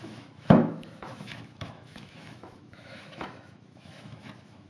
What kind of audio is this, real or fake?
fake